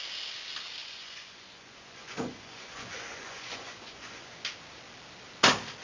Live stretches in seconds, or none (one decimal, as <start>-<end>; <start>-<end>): 0.0-0.8; 4.3-5.8